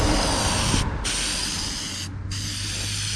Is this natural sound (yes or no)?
yes